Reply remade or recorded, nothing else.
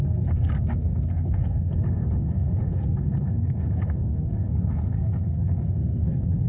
remade